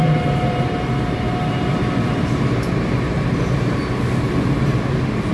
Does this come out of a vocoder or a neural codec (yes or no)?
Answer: yes